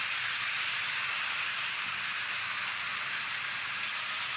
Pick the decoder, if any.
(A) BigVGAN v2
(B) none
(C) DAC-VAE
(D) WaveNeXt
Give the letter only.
B